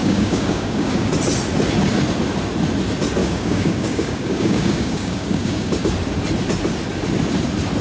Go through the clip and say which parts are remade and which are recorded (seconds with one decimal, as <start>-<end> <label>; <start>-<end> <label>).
0.0-1.1 remade; 1.1-3.2 recorded; 3.2-5.8 remade; 5.8-7.8 recorded